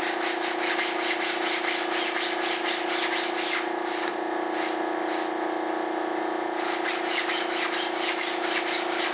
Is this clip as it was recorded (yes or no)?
yes